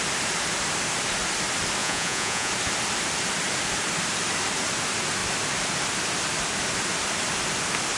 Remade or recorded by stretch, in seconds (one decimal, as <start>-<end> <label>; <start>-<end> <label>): 0.0-1.8 recorded; 1.8-2.5 remade; 2.5-8.0 recorded